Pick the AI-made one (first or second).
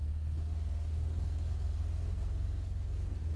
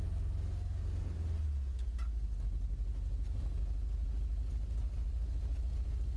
first